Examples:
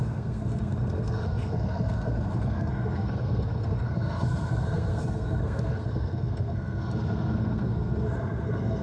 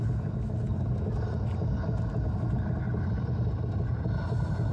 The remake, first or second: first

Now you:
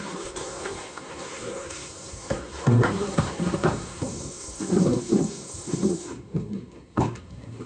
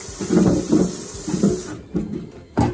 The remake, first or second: first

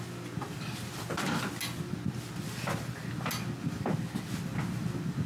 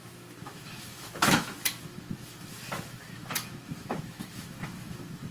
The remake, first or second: second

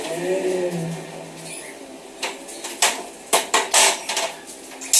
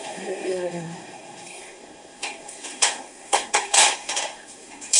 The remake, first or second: second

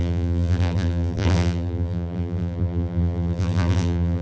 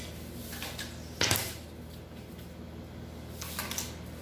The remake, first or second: first